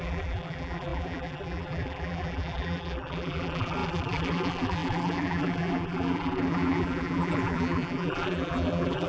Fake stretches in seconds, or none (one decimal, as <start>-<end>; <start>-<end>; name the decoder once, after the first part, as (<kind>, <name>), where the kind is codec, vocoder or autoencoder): 0.0-9.1 (vocoder, BigVGAN v2)